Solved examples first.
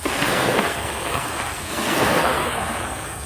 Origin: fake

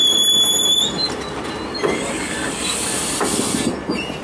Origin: real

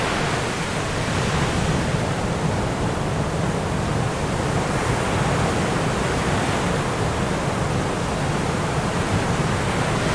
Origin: real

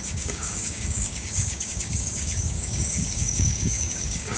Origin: fake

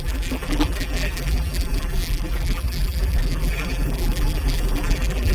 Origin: fake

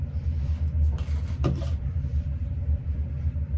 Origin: fake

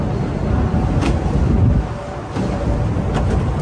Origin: real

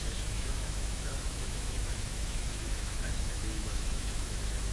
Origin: fake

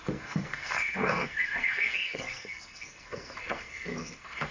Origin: fake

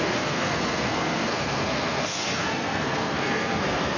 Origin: fake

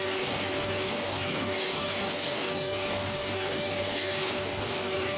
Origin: fake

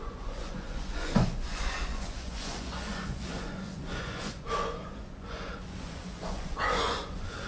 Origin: fake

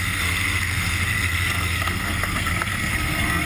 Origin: fake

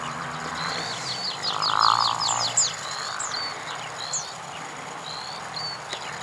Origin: real